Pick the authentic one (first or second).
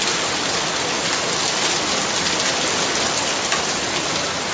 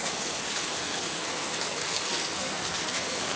first